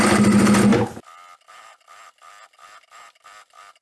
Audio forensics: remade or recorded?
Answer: recorded